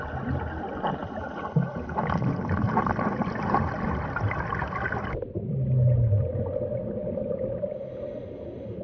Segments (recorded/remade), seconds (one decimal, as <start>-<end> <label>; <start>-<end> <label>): 0.0-1.0 recorded; 1.0-2.8 remade; 2.8-7.0 recorded; 7.0-8.8 remade